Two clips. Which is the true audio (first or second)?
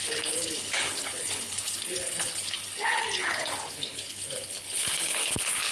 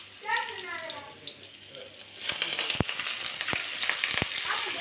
second